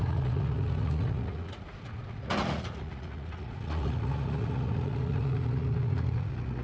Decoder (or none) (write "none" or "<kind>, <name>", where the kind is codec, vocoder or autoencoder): vocoder, Vocos